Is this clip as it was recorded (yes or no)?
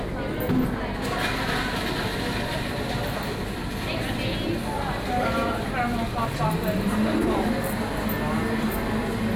yes